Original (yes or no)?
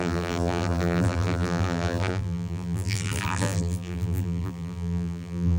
no